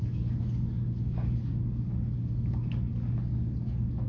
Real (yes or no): no